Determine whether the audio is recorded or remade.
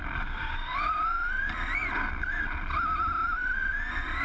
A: recorded